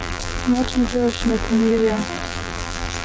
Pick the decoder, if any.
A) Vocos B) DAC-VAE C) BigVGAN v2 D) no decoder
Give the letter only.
C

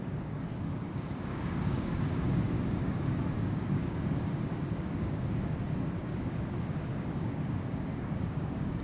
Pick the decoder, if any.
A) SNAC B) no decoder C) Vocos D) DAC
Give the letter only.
D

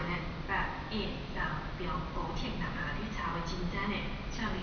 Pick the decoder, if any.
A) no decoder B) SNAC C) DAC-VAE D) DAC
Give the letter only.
A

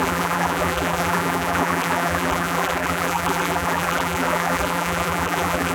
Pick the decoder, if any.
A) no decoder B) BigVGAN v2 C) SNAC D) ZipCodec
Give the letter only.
B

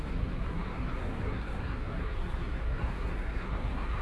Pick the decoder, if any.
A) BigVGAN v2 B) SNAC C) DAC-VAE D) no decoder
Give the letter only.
B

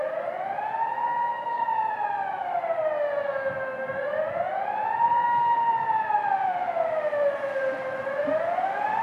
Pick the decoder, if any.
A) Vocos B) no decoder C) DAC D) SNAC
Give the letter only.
B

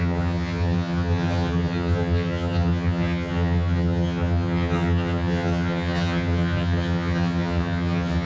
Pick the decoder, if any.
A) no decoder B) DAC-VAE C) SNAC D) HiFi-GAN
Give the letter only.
D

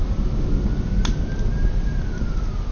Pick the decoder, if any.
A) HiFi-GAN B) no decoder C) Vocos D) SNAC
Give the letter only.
B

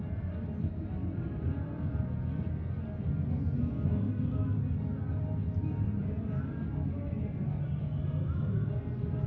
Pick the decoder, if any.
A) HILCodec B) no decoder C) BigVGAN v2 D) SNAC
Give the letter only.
B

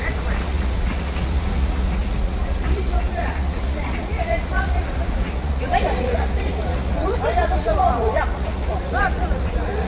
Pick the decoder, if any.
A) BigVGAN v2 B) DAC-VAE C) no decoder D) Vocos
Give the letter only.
D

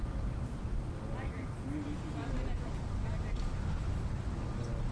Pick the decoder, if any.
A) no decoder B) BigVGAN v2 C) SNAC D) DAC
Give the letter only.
A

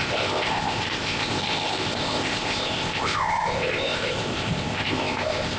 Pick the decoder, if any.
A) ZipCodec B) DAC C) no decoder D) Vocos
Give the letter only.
A